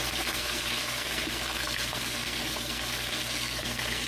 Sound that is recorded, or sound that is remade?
remade